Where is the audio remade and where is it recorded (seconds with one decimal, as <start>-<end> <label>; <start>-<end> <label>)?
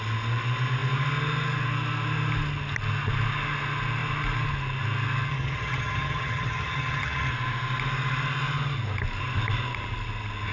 0.0-5.3 recorded; 5.3-7.3 remade; 7.3-10.5 recorded